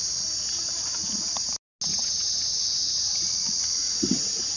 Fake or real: real